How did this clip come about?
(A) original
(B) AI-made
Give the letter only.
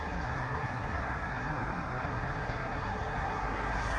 B